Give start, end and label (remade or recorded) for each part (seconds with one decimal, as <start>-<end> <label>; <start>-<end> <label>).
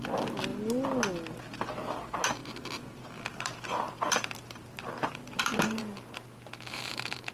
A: 0.0-3.3 recorded; 3.3-7.3 remade